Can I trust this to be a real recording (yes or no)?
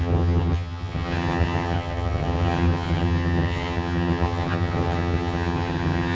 no